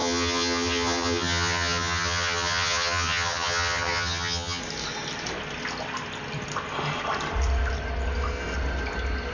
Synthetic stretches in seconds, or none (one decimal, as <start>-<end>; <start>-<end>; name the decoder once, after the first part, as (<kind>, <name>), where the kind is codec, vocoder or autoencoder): 0.0-4.6 (vocoder, HiFi-GAN)